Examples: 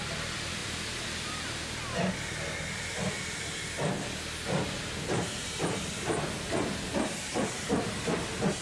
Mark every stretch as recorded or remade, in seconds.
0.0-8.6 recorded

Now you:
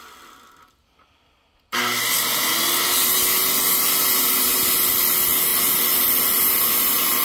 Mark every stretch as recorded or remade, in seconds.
0.0-7.2 recorded